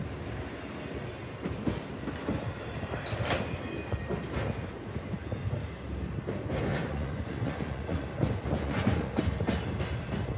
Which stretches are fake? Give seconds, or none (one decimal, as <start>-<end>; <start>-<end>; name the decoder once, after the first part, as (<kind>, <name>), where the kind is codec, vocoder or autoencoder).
6.7-9.2 (vocoder, Vocos)